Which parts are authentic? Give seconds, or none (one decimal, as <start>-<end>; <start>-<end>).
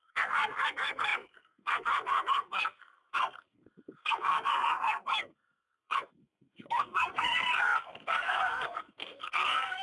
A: none